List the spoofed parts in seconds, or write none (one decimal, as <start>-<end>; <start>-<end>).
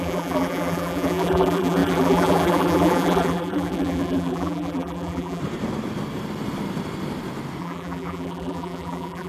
0.0-5.4; 7.6-9.3